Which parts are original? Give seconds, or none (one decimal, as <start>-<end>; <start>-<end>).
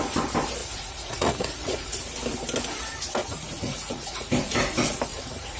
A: 0.0-0.6; 2.0-3.2; 4.3-5.1